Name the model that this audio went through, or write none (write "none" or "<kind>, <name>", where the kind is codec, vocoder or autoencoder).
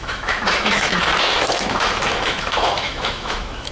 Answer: autoencoder, DAC-VAE